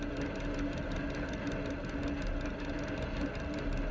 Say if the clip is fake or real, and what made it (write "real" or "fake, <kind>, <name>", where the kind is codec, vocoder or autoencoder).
real